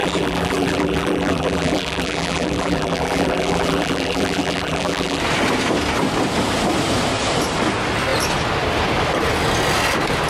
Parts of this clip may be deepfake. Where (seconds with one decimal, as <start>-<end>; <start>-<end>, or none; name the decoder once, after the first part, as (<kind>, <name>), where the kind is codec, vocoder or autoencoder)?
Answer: 0.0-5.2 (vocoder, BigVGAN v2)